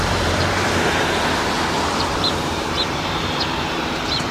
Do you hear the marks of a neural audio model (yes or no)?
yes